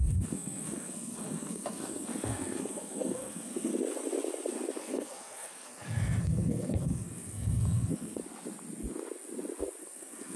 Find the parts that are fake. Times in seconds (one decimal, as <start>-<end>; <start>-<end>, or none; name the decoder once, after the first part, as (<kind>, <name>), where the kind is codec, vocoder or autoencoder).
0.0-3.7 (codec, SNAC); 4.8-8.2; 9.8-10.4